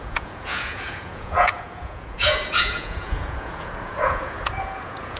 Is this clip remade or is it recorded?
remade